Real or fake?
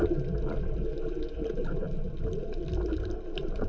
real